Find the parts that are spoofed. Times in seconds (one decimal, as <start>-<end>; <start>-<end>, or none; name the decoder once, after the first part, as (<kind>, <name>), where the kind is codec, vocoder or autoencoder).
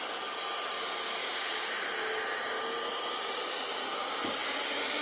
none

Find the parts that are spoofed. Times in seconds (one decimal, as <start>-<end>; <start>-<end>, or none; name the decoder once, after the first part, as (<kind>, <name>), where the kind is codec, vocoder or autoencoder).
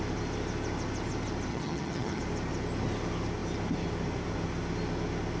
1.5-2.2 (vocoder, HiFi-GAN)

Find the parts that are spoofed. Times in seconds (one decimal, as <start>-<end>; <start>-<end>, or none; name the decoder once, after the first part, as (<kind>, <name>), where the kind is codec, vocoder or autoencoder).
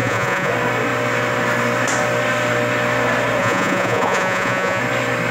0.0-0.5 (vocoder, Vocos); 3.4-4.8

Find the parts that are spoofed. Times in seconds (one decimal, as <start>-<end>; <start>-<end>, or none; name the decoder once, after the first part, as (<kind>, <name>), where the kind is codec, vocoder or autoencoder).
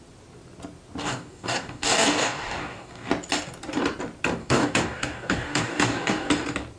1.0-3.1 (codec, DAC); 4.4-6.3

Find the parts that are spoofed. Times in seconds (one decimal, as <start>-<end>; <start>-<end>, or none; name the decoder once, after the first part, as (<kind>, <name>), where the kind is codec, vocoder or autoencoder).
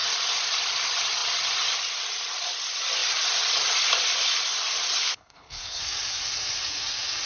5.0-5.8 (codec, HILCodec)